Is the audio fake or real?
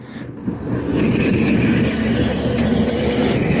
real